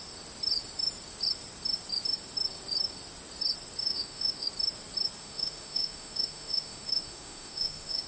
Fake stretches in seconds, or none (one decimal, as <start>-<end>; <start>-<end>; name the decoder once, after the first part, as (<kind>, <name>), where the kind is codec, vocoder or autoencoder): 3.8-4.5 (autoencoder, DAC-VAE); 5.2-8.1